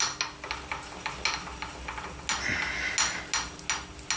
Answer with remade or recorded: recorded